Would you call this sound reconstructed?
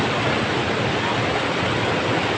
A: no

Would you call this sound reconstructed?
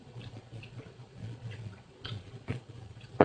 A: yes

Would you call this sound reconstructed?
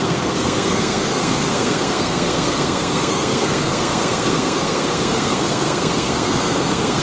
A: yes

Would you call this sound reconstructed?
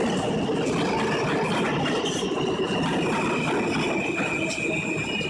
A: no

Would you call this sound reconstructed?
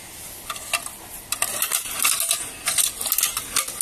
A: no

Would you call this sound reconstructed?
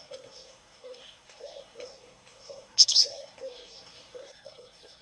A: yes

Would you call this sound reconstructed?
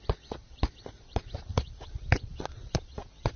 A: yes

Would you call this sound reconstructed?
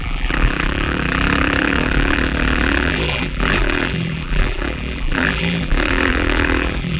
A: yes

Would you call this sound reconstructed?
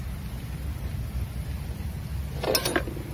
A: no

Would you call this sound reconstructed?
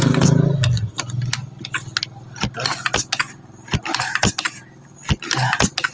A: no